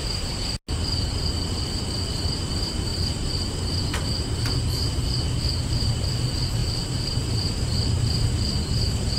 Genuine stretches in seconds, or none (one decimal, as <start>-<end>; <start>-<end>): 0.0-2.5; 2.9-4.7